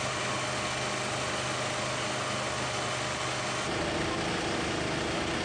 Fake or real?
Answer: real